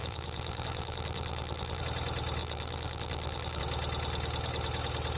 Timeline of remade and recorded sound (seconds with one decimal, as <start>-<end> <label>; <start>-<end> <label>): 0.0-1.8 remade; 1.8-2.4 recorded; 2.4-3.6 remade; 3.6-5.2 recorded